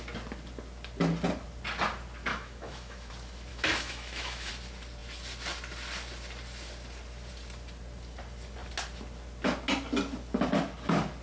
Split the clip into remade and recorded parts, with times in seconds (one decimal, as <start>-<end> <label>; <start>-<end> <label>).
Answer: 0.0-2.3 recorded; 2.3-3.1 remade; 3.1-3.5 recorded; 3.5-4.5 remade; 4.5-11.2 recorded